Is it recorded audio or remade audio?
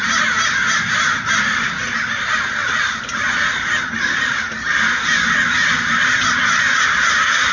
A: recorded